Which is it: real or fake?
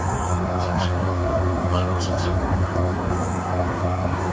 fake